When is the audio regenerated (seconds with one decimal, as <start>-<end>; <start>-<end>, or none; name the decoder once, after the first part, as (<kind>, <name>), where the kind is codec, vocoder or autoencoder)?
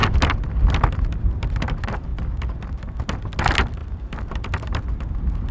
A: 3.8-4.8 (vocoder, BigVGAN v2)